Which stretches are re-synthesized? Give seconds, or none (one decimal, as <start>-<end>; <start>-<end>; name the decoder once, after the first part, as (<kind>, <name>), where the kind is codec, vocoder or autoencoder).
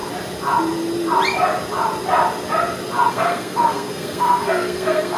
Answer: 3.1-5.2 (codec, SNAC)